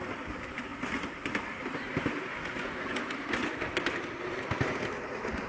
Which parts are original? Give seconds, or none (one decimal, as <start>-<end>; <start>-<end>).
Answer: 0.0-5.5